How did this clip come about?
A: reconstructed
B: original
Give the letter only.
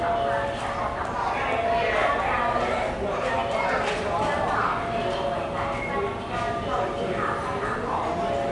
B